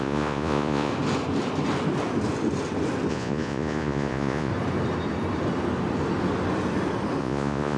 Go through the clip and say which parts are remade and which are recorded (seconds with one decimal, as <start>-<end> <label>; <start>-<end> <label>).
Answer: 0.0-0.9 remade; 0.9-3.1 recorded; 3.1-4.5 remade; 4.5-7.2 recorded; 7.2-7.8 remade